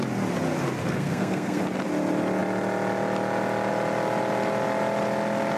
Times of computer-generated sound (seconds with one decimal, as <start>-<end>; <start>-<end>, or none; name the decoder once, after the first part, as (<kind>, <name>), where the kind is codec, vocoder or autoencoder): 0.8-1.6 (codec, SNAC)